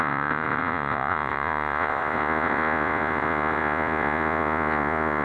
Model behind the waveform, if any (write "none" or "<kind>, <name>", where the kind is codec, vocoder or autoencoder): vocoder, Vocos